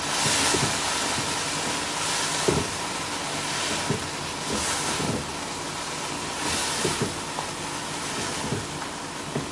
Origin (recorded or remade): recorded